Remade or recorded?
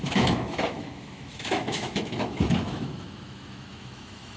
remade